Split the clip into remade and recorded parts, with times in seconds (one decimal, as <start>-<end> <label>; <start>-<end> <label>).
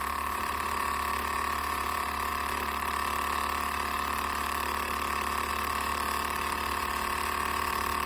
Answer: 0.0-2.3 remade; 2.3-5.5 recorded; 5.5-5.9 remade; 5.9-6.7 recorded; 6.7-8.1 remade